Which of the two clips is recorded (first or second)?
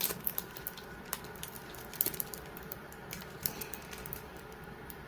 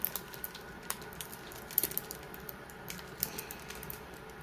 second